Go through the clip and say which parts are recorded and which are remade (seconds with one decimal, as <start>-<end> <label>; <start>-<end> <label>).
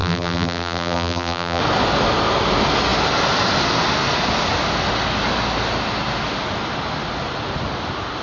0.0-1.6 remade; 1.6-8.2 recorded